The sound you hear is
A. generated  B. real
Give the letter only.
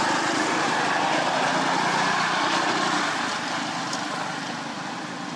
B